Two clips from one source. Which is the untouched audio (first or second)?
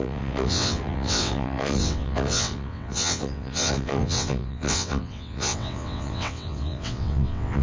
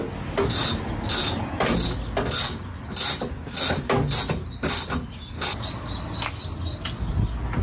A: second